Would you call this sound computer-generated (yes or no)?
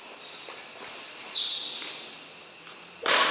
no